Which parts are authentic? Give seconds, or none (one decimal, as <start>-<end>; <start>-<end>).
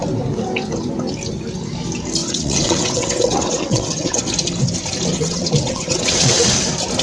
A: 0.0-2.2; 4.2-5.1; 6.5-7.0